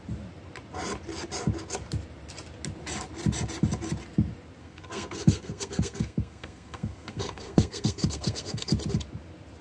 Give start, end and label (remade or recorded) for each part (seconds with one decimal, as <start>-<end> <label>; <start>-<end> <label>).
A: 0.0-4.6 recorded; 4.6-8.7 remade; 8.7-9.6 recorded